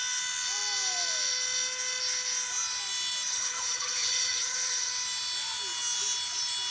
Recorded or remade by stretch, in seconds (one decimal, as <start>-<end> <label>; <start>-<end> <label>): 0.0-3.3 recorded; 3.3-4.9 remade; 4.9-6.7 recorded